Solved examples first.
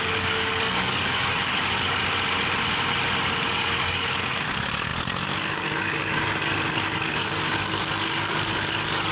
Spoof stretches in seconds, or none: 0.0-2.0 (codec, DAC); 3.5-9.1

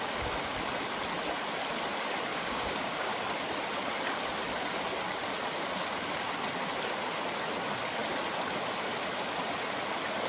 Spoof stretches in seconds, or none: 2.3-3.2 (codec, DAC)

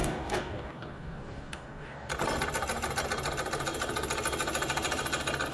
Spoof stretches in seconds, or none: 0.0-2.1 (codec, DAC)